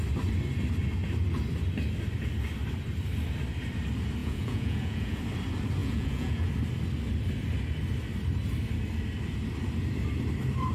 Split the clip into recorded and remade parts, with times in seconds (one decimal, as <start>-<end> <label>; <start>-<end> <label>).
0.0-4.2 recorded; 4.2-5.2 remade; 5.2-5.8 recorded; 5.8-6.5 remade; 6.5-10.7 recorded